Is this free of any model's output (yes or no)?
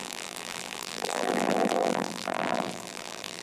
no